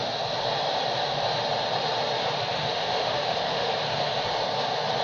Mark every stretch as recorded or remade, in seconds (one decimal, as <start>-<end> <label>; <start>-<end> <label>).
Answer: 0.0-2.5 recorded; 2.5-3.7 remade; 3.7-5.0 recorded